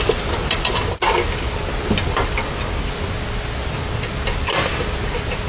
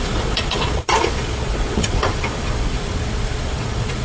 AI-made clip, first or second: second